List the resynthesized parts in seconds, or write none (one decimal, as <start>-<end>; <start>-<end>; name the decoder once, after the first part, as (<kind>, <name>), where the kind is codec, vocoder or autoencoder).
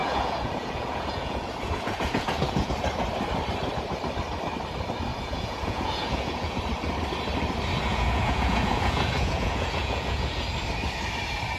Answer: 0.0-2.7 (vocoder, Vocos); 5.1-6.6; 7.9-10.4